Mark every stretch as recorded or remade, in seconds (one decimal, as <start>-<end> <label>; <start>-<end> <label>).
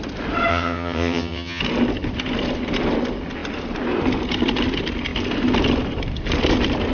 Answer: 0.0-0.5 recorded; 0.5-1.6 remade; 1.6-6.9 recorded